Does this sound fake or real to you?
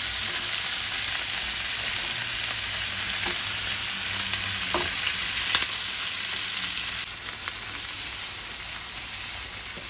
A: real